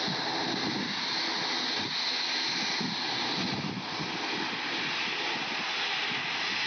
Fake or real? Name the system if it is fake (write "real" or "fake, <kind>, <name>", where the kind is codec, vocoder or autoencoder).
real